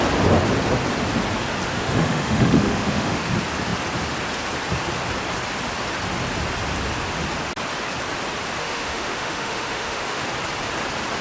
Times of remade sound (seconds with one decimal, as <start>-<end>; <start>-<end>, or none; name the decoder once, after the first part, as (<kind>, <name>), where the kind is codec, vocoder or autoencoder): 1.7-3.3 (autoencoder, DAC-VAE); 8.6-10.2

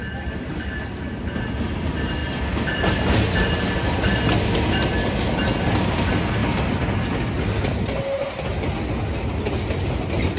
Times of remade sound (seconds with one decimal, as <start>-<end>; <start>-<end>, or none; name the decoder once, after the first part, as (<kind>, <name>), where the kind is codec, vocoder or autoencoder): none

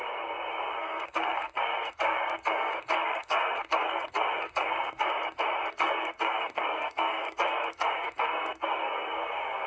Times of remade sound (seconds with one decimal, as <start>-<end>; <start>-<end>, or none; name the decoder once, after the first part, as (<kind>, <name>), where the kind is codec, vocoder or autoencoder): 0.0-5.1 (codec, SNAC); 5.7-9.7